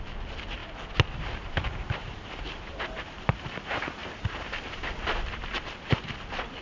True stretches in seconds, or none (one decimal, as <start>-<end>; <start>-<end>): 0.6-1.5